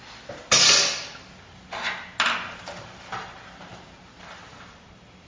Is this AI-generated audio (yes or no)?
no